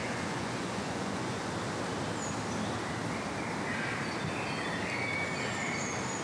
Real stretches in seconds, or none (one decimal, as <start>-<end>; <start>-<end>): 1.5-6.2